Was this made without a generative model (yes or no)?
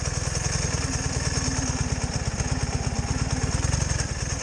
yes